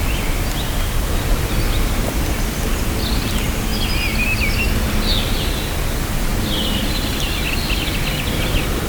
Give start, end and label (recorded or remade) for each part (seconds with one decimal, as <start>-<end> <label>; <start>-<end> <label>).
0.0-8.9 recorded